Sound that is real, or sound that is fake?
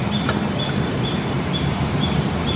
real